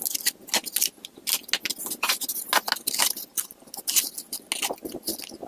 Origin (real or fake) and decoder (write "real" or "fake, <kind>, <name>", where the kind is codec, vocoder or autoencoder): real